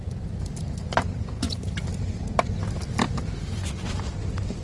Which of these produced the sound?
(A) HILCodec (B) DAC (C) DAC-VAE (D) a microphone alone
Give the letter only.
D